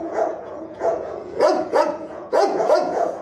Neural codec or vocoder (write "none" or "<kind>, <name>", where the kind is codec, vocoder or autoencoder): vocoder, Vocos